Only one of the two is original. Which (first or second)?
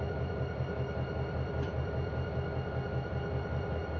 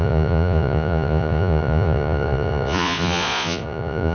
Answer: first